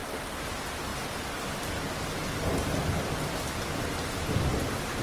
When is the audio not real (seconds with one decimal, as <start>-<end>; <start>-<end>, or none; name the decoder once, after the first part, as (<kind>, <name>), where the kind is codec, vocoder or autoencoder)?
none